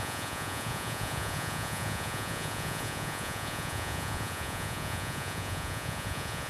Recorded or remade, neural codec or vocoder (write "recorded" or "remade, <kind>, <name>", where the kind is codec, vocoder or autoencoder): remade, vocoder, Vocos